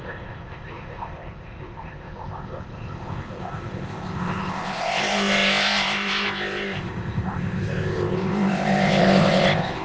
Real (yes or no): no